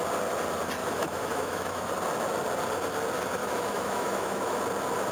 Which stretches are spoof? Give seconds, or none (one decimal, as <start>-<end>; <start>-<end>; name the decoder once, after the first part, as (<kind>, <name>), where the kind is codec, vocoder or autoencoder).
0.8-1.9 (autoencoder, DAC-VAE); 3.4-4.6